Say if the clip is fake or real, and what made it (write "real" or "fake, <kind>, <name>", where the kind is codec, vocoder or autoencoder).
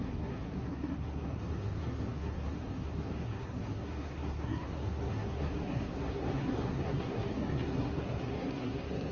fake, codec, SNAC